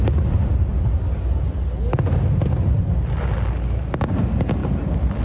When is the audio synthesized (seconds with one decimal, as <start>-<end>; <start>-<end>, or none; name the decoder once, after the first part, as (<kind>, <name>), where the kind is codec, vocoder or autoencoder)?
none